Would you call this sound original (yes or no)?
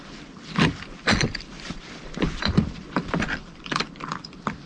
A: no